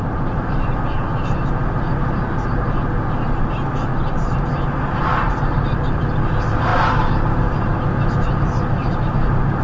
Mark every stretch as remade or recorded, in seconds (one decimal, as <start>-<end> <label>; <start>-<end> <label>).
0.0-9.6 recorded

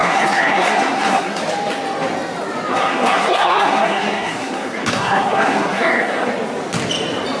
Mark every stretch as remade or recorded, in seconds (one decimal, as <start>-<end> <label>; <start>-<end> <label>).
0.0-1.4 remade; 1.4-2.7 recorded; 2.7-6.3 remade; 6.3-7.4 recorded

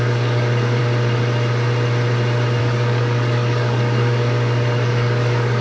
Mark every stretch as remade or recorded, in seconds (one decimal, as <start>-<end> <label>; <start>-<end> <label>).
0.0-0.8 remade; 0.8-2.6 recorded; 2.6-5.6 remade

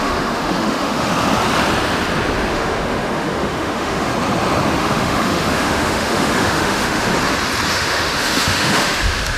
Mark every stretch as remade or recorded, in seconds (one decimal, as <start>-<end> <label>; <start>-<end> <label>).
0.0-1.1 remade; 1.1-2.5 recorded; 2.5-4.1 remade; 4.1-4.8 recorded; 4.8-7.1 remade; 7.1-7.7 recorded; 7.7-9.4 remade

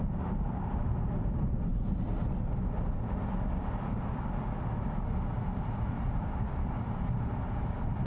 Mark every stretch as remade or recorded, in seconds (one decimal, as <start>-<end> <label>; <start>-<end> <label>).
0.0-1.7 remade; 1.7-5.9 recorded; 5.9-8.1 remade